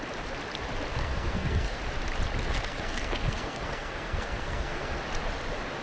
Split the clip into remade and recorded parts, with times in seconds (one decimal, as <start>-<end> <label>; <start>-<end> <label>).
0.0-0.9 recorded; 0.9-1.8 remade; 1.8-2.4 recorded; 2.4-5.0 remade; 5.0-5.8 recorded